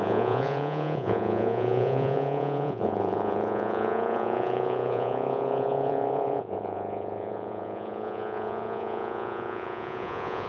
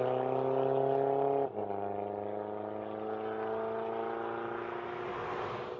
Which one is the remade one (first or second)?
first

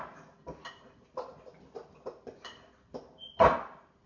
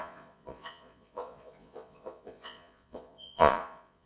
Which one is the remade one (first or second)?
second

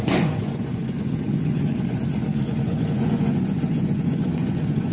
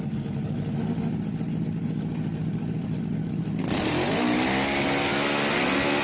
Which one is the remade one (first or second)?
first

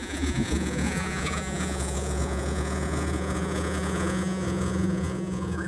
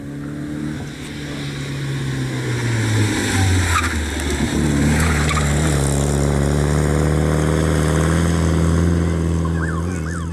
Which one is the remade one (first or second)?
first